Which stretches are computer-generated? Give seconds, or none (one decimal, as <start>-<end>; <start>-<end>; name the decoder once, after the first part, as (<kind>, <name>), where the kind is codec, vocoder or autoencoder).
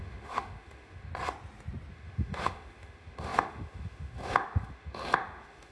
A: 0.0-1.1 (autoencoder, DAC-VAE); 1.9-5.7